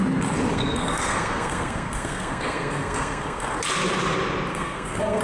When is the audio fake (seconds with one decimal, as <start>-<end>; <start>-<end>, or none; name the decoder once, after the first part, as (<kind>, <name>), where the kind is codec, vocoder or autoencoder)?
0.5-3.6 (codec, SNAC); 4.5-5.2